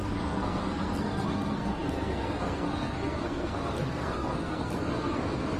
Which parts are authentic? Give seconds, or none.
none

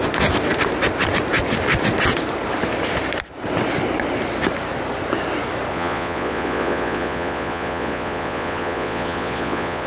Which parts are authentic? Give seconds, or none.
0.0-5.7

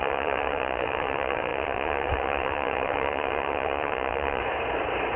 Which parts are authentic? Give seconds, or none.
4.4-5.2

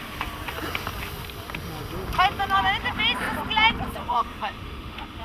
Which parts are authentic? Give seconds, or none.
0.0-4.0

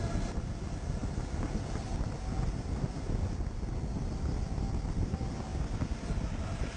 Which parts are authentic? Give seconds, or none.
0.0-6.8

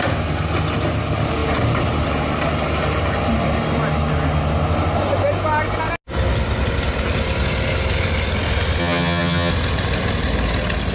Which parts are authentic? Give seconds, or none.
0.0-8.8; 9.5-10.9